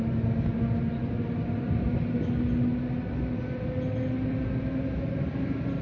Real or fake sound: real